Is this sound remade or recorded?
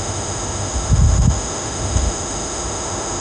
remade